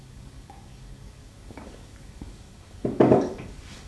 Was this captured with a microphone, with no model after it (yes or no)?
no